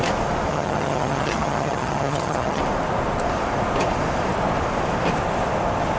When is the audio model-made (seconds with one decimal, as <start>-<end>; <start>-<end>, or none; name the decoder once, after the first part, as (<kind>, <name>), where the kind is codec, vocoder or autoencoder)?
0.5-2.6 (vocoder, HiFi-GAN)